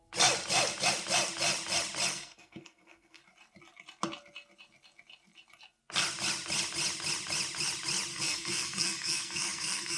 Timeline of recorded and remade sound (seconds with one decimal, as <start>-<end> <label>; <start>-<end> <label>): 0.0-2.1 recorded; 2.1-3.2 remade; 3.2-8.1 recorded; 8.1-10.0 remade